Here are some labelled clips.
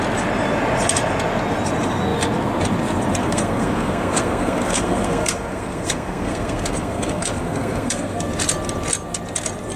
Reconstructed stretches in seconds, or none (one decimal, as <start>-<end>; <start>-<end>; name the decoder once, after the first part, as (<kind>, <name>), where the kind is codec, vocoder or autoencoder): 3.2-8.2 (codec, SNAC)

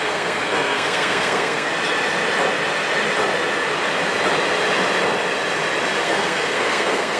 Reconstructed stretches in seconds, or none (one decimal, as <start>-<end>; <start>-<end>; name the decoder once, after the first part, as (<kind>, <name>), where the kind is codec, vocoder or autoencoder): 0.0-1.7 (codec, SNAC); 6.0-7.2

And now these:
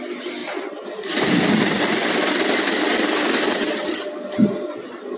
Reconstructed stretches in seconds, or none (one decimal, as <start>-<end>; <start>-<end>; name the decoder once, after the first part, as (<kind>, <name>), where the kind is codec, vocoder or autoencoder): none

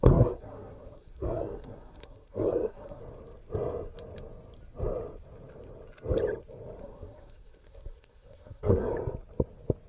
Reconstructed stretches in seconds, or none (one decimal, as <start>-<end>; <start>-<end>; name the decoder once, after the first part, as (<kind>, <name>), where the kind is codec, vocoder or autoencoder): 0.0-3.0 (codec, SNAC); 6.8-8.9

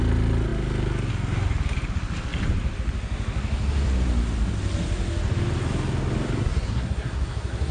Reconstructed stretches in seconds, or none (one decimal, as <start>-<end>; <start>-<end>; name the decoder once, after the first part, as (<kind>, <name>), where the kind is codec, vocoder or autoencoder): 6.4-7.7 (codec, SNAC)